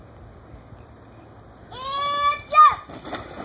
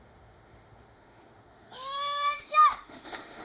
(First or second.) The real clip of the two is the first